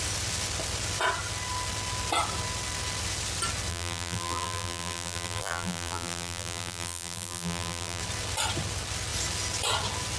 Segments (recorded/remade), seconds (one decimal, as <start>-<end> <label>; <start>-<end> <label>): 0.0-3.7 recorded; 3.7-8.0 remade; 8.0-10.2 recorded